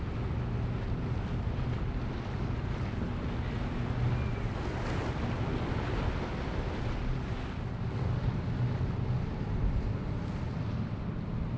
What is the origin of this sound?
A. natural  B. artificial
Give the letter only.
A